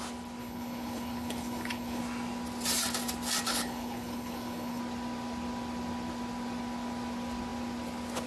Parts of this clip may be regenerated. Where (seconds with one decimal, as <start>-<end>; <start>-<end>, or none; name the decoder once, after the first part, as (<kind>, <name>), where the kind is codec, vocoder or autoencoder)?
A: 0.4-2.0 (codec, HILCodec); 3.5-4.8